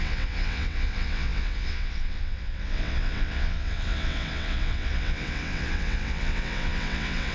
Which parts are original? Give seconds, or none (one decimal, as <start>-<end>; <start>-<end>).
none